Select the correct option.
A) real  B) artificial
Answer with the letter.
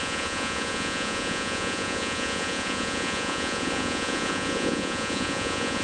B